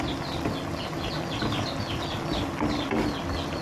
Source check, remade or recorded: recorded